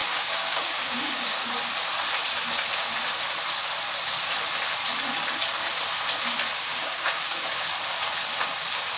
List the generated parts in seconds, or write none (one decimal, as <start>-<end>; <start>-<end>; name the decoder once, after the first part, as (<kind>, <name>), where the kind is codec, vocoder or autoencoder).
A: 0.0-1.6 (codec, DAC); 6.7-7.7